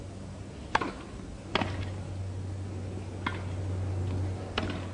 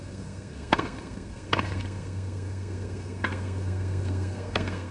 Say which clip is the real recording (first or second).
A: first